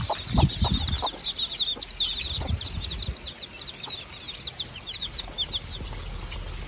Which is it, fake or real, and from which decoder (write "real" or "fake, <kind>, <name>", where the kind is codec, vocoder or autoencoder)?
real